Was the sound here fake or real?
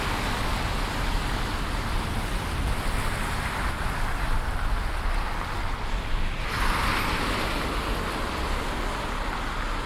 real